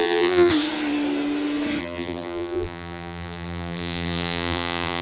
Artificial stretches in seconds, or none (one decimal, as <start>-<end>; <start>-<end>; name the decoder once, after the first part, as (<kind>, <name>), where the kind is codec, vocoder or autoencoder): 0.0-0.5 (vocoder, BigVGAN v2); 1.8-5.0

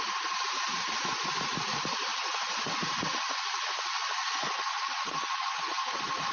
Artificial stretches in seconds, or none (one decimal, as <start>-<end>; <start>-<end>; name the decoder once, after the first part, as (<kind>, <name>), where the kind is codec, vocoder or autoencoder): 2.1-6.3 (vocoder, Vocos)

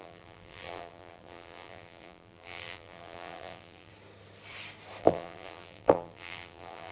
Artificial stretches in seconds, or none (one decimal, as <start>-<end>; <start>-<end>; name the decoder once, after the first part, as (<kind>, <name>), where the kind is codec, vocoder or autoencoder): 0.0-3.9 (vocoder, BigVGAN v2); 5.0-6.9